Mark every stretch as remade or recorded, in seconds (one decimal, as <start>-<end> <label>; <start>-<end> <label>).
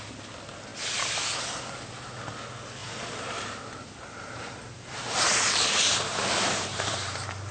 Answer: 0.0-2.8 recorded; 2.8-7.5 remade